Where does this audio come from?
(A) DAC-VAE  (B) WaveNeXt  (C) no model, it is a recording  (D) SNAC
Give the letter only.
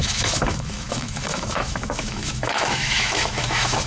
A